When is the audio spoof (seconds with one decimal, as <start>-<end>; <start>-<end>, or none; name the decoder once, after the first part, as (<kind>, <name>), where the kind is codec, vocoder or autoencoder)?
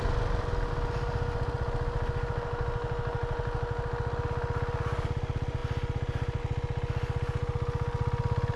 none